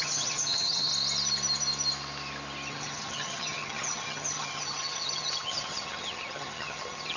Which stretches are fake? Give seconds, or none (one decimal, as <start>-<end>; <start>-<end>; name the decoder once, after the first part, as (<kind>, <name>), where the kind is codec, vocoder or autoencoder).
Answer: 0.0-0.9 (vocoder, HiFi-GAN); 2.7-7.2